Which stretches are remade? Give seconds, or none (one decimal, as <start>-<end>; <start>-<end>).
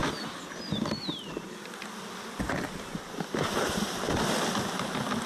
none